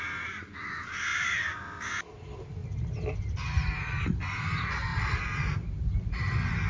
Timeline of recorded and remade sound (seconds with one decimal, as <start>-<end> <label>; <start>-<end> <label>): 0.0-1.1 recorded; 1.1-1.6 remade; 1.6-6.7 recorded